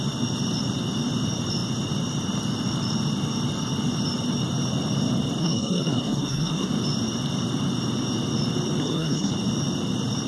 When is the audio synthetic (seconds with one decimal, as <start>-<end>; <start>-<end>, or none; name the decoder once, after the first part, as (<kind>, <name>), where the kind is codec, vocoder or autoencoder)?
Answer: 5.4-6.7 (codec, SNAC); 8.8-9.3